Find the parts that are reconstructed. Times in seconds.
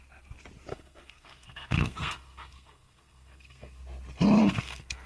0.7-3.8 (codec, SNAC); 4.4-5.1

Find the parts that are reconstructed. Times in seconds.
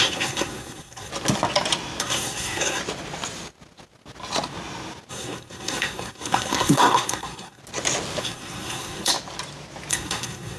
0.0-1.1 (codec, SNAC); 2.0-2.8; 5.1-7.6; 8.2-9.1; 9.9-10.6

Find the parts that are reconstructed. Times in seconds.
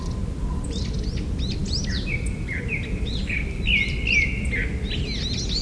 none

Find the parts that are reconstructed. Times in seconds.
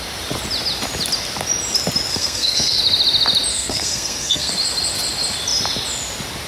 2.1-2.8 (codec, SNAC); 3.5-4.5